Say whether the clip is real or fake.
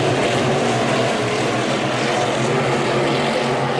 real